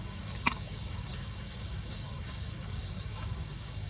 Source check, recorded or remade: remade